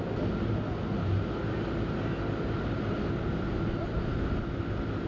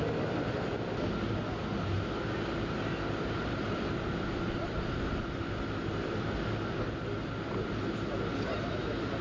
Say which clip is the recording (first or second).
first